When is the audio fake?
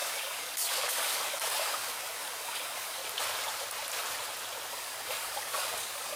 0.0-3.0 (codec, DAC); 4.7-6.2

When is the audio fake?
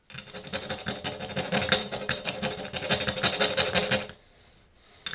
1.8-2.6 (codec, DAC)